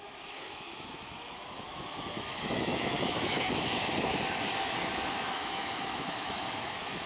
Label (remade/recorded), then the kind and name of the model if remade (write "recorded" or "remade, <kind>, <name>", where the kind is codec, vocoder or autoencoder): remade, autoencoder, DAC-VAE